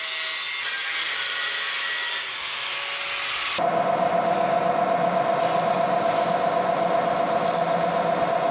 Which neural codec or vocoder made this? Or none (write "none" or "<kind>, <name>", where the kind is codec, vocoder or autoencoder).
none